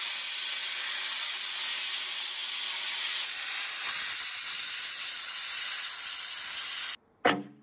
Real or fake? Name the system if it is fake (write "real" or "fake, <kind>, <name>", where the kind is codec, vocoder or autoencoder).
real